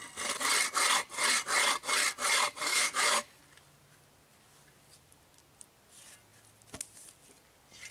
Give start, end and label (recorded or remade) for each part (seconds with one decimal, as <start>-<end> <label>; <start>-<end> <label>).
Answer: 0.0-2.7 recorded; 2.7-3.4 remade; 3.4-7.9 recorded